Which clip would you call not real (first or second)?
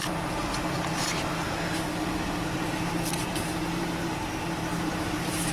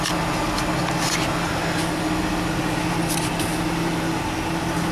first